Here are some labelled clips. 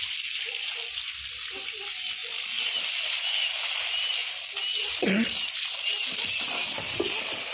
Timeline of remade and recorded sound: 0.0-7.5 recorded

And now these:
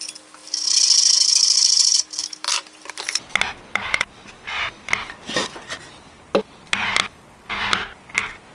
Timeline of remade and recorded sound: 0.0-8.5 recorded

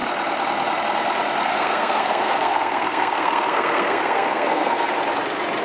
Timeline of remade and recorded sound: 0.0-1.5 recorded; 1.5-4.9 remade; 4.9-5.6 recorded

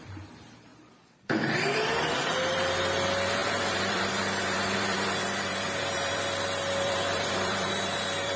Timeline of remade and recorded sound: 0.0-8.4 remade